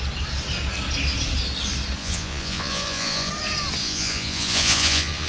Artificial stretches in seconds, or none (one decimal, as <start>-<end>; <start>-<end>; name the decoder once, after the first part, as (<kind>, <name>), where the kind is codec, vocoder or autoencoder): 2.0-3.3 (vocoder, Vocos); 3.8-5.3